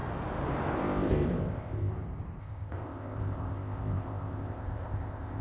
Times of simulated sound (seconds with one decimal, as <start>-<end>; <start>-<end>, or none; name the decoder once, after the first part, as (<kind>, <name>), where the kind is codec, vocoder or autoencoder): 0.7-1.9 (codec, ZipCodec); 2.4-5.4